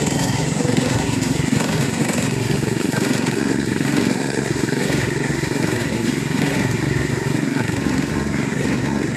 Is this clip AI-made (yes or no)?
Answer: yes